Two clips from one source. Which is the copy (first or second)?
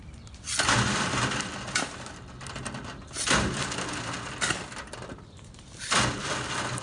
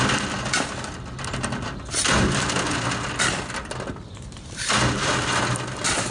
first